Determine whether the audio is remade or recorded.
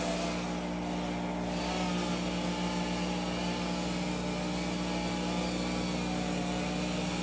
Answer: recorded